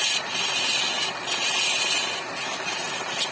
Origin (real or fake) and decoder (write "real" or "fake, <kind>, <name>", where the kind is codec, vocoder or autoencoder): real